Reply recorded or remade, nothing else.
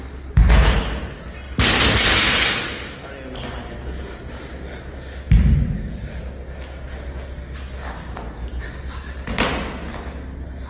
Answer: recorded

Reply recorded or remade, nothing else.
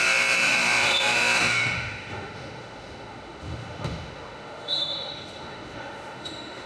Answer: remade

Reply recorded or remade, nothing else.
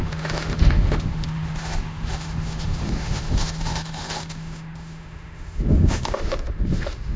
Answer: remade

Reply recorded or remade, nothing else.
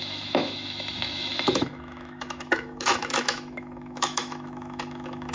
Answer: remade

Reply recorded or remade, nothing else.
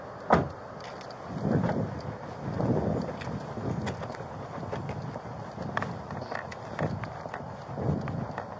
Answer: recorded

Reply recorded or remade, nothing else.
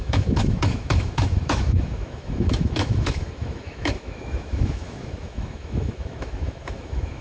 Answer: remade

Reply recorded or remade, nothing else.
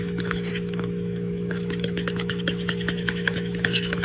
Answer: remade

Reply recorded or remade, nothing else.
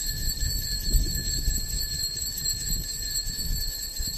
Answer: remade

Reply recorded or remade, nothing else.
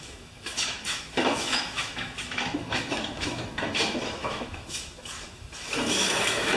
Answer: remade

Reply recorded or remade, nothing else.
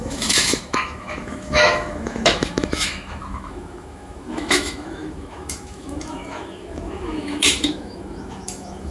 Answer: remade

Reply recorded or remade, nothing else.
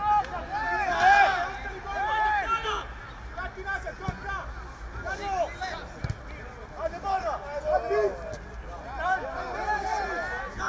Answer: recorded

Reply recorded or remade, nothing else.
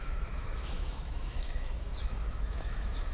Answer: remade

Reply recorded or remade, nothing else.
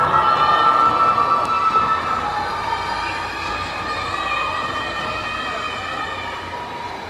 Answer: recorded